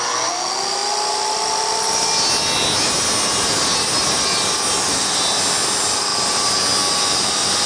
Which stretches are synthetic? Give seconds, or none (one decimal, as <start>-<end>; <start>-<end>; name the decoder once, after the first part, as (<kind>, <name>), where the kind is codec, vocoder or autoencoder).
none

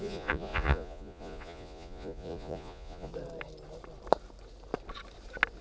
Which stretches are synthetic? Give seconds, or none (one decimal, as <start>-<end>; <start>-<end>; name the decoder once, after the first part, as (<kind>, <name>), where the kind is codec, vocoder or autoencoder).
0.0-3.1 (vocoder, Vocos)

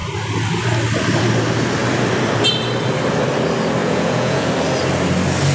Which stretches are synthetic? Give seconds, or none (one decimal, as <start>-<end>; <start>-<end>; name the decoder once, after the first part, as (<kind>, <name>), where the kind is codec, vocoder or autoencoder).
3.8-4.5 (vocoder, Vocos)

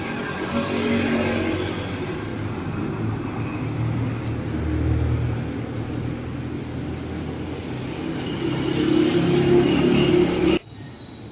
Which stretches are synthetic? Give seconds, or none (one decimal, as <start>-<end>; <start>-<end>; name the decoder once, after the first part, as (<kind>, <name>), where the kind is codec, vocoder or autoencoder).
none

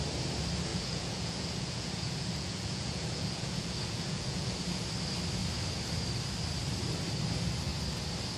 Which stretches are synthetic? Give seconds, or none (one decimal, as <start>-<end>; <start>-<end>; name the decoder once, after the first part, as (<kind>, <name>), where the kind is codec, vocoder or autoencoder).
0.7-4.8 (vocoder, Vocos)

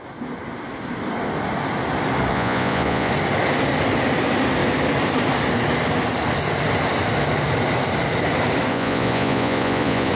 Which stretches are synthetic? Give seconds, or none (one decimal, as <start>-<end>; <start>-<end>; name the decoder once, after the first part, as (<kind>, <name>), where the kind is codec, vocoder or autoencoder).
2.3-3.1 (vocoder, Vocos); 8.7-10.1